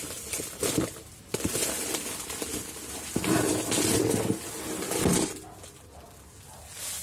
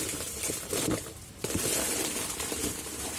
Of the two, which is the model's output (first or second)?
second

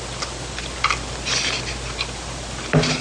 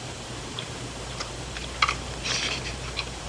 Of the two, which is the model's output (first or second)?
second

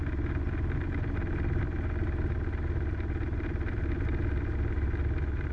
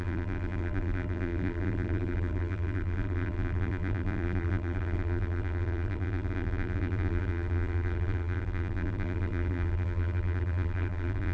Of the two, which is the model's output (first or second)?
second